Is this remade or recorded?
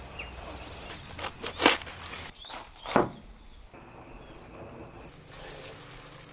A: recorded